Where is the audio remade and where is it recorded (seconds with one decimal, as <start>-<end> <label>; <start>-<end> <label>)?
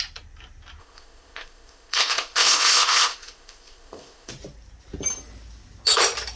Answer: 0.0-0.8 recorded; 0.8-4.3 remade; 4.3-6.4 recorded